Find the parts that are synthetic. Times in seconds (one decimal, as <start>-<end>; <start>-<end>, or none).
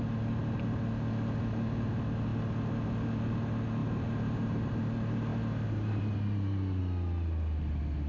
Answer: 3.8-4.8; 5.3-6.8